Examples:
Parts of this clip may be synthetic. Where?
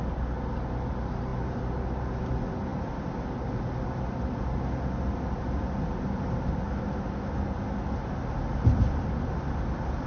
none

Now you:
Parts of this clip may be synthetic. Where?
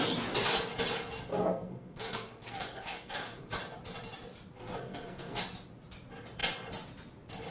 1.3-3.5 (codec, SNAC); 4.6-5.4